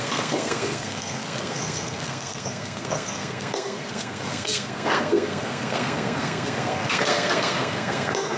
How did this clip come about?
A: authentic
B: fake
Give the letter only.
B